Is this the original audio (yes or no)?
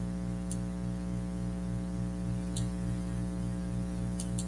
yes